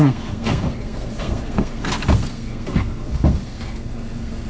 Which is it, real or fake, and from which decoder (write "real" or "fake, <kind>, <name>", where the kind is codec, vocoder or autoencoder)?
fake, codec, SNAC